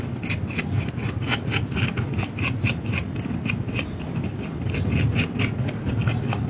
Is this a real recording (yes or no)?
yes